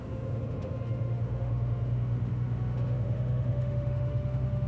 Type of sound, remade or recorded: remade